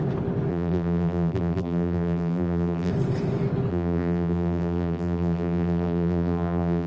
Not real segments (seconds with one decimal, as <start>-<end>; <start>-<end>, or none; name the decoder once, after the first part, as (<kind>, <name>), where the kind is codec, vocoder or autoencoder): 0.5-2.9 (vocoder, BigVGAN v2); 3.7-6.9